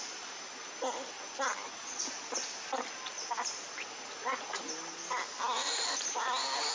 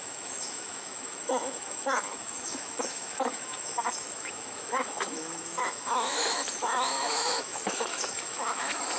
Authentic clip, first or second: first